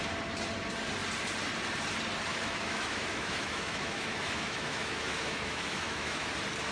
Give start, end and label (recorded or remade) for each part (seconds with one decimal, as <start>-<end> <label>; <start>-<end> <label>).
0.0-2.3 recorded; 2.3-6.3 remade; 6.3-6.7 recorded